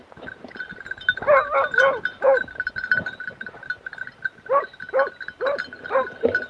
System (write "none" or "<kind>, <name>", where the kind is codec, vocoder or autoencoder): none